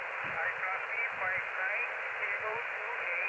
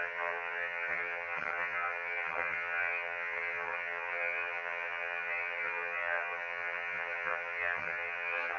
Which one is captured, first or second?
first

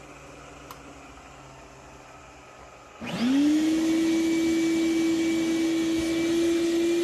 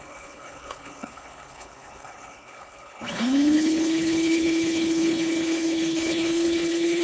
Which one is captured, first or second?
first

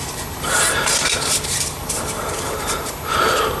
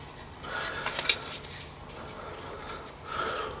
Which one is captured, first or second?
second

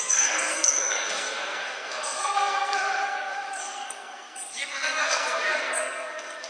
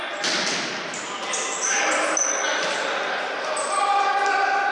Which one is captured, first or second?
second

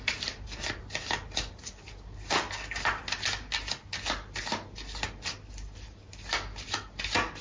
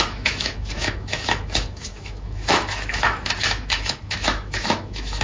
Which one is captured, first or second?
first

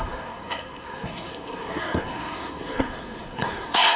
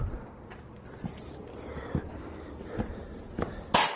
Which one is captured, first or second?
second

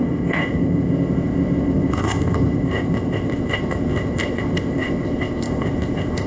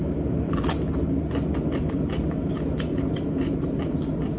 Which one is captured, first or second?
second